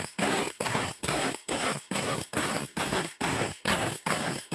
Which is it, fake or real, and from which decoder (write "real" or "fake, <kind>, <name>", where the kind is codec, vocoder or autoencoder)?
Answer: fake, codec, SNAC